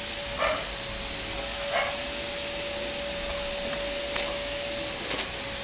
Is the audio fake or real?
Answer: real